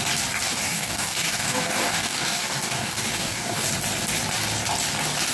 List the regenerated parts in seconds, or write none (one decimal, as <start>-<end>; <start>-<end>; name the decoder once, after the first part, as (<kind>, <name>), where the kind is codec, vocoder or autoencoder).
0.5-3.7 (codec, DAC)